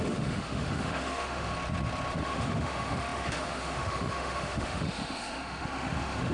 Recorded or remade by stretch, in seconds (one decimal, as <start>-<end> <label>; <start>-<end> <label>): 0.0-1.5 remade; 1.5-2.1 recorded; 2.1-6.3 remade